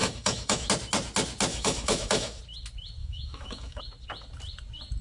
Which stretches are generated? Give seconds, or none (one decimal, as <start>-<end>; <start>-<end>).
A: 0.0-0.7; 1.5-2.4; 3.0-3.8